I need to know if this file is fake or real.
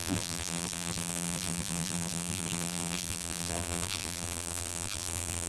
fake